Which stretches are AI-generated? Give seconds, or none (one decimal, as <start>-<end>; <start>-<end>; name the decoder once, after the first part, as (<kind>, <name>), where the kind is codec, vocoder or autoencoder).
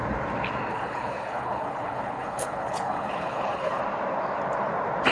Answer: 0.7-3.8 (codec, HILCodec)